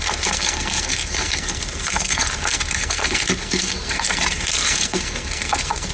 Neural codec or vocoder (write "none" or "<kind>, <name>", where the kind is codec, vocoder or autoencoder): codec, SNAC